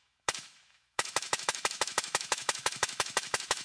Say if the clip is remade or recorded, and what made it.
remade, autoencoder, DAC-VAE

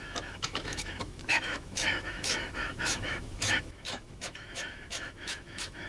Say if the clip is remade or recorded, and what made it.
remade, autoencoder, DAC-VAE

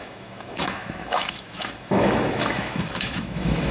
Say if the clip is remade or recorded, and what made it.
remade, autoencoder, DAC-VAE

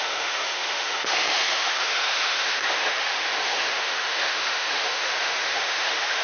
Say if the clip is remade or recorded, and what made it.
remade, autoencoder, DAC-VAE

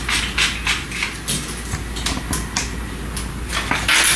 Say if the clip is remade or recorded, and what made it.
recorded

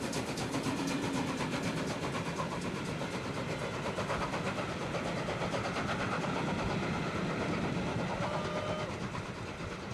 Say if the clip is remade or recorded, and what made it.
recorded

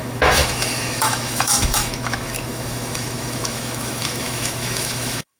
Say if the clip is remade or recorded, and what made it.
remade, autoencoder, DAC-VAE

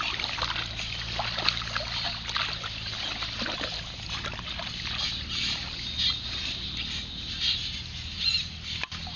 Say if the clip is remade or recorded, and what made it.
recorded